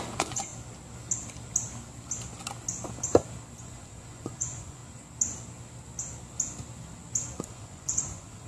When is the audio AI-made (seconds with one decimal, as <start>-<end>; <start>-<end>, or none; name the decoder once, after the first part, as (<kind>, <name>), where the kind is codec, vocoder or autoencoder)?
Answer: 0.0-0.5 (vocoder, Vocos); 3.6-4.8; 7.4-8.5